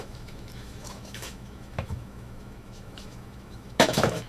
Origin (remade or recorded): remade